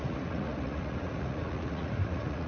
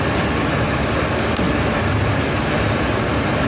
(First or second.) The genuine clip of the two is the second